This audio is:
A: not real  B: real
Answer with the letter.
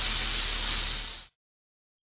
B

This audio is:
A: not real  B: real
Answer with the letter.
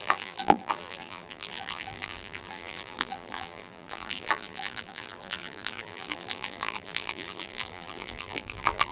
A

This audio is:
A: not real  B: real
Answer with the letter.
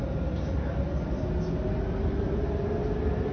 B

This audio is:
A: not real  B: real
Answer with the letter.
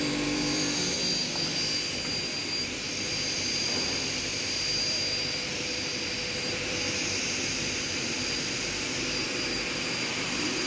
A